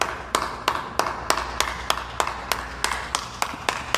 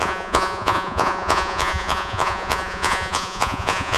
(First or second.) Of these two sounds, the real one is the first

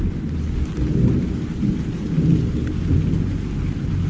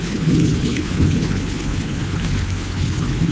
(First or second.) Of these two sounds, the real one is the first